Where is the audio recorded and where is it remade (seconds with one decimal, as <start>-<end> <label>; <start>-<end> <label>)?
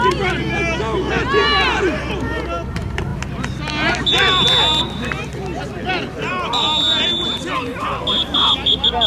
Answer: 0.0-9.1 recorded